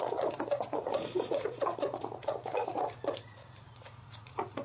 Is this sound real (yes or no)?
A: no